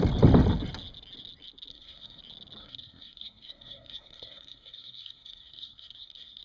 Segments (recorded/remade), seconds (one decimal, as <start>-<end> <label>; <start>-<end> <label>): 0.0-1.7 recorded; 1.7-2.2 remade; 2.2-2.6 recorded; 2.6-6.4 remade